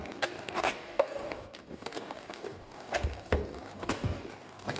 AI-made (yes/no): yes